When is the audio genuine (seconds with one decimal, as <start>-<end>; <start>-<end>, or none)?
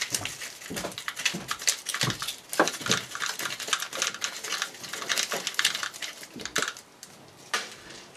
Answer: 0.0-8.2